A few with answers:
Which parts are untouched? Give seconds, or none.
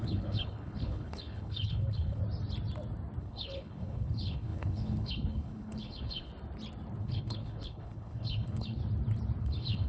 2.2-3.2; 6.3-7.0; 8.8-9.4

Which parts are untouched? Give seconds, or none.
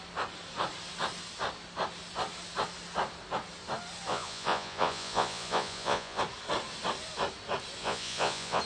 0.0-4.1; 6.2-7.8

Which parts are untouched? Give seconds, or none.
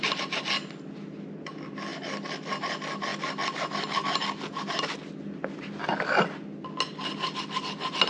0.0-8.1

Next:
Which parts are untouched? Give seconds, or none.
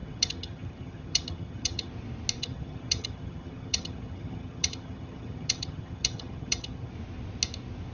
1.9-2.4; 6.9-7.9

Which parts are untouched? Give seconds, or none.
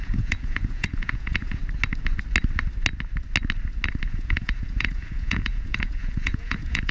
1.6-4.1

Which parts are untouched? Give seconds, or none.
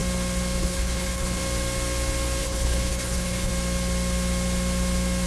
0.0-0.6; 1.4-2.4; 3.5-5.3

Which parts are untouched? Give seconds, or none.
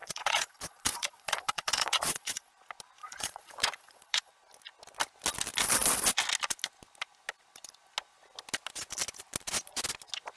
2.5-3.0; 4.3-10.4